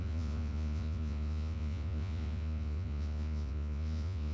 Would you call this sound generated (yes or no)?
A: yes